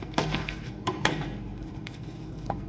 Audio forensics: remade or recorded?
remade